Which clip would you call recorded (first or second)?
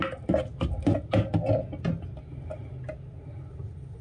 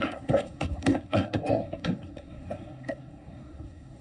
first